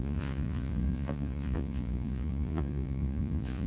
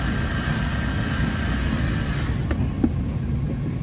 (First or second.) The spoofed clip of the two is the first